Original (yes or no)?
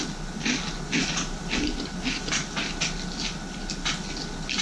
yes